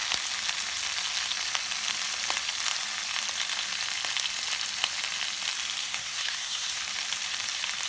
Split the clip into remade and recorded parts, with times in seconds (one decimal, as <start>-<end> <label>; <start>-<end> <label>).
0.0-5.8 recorded; 5.8-6.8 remade; 6.8-7.9 recorded